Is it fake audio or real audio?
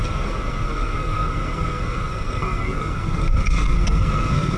fake